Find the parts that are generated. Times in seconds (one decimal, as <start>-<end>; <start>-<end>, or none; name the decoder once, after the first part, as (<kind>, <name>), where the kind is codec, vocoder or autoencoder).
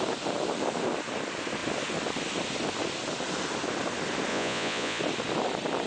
4.3-5.0 (vocoder, Vocos)